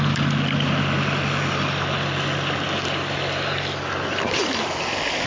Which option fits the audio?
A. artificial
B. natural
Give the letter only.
B